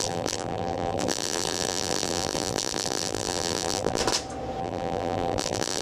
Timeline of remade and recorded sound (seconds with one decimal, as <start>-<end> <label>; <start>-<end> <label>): 0.0-4.0 remade; 4.0-4.6 recorded; 4.6-5.8 remade